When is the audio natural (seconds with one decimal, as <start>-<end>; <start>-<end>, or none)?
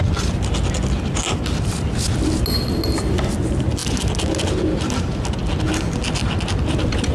0.0-7.1